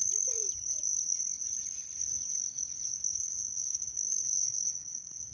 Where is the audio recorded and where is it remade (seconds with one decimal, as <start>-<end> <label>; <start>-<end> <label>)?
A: 0.0-3.2 recorded; 3.2-5.3 remade